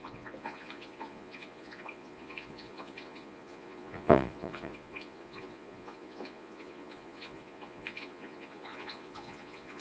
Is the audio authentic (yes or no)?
no